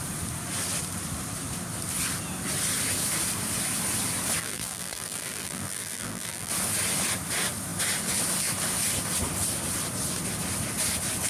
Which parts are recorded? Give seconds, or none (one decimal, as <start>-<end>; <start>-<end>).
0.0-4.4; 6.5-11.3